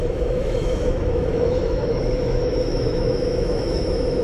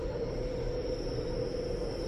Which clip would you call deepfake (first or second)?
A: first